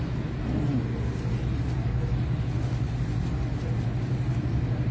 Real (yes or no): yes